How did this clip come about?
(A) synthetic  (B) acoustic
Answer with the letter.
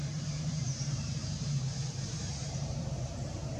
A